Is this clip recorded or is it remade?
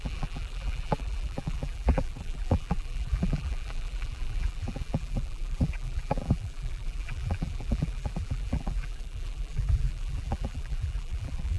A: remade